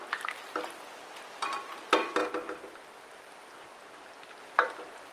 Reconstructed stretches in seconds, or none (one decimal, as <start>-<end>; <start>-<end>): none